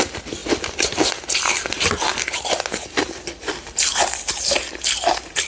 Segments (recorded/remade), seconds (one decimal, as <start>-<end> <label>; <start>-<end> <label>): 0.0-5.5 recorded